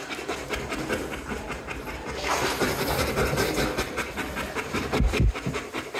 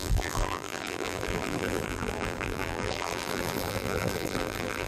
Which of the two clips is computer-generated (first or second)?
second